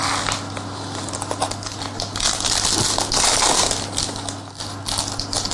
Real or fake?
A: real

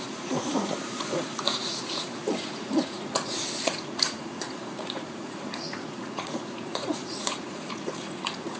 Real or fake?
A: fake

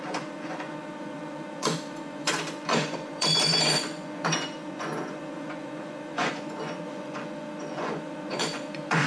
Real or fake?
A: fake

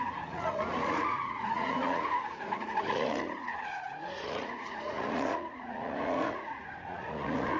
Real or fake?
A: fake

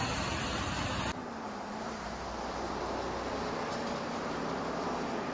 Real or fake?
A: real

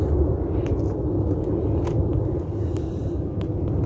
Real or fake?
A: real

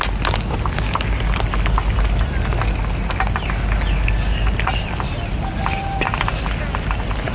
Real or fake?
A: real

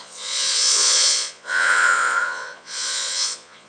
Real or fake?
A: fake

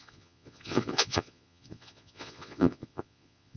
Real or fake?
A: fake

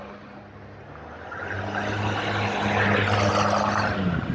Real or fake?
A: real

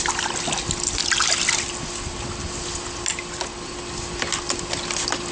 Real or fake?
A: real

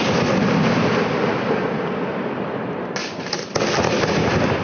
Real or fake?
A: real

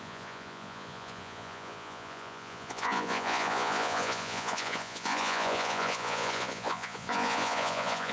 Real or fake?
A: fake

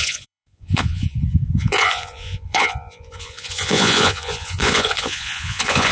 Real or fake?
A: fake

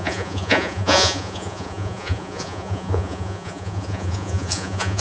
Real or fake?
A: fake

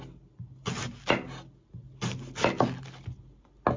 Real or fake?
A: real